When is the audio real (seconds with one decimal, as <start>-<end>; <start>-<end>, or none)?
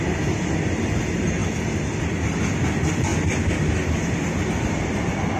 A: 0.0-5.4